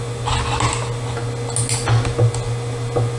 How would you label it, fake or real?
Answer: real